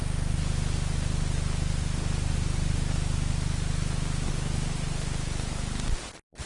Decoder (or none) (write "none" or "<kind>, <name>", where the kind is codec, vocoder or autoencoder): none